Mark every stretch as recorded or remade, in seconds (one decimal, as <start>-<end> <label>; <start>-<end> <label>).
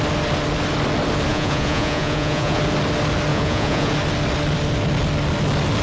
0.0-1.3 recorded; 1.3-2.6 remade; 2.6-3.3 recorded; 3.3-3.9 remade; 3.9-5.8 recorded